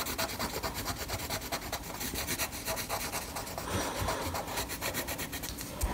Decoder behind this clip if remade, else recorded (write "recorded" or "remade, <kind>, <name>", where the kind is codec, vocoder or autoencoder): recorded